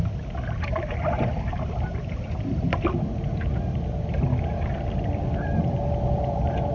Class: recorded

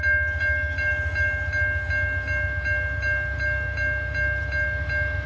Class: recorded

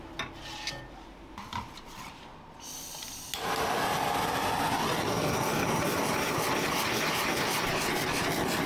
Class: recorded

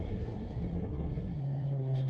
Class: remade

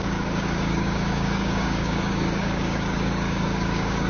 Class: remade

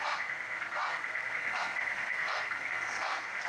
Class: remade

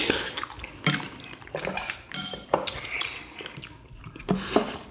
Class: recorded